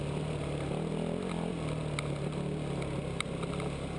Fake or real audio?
real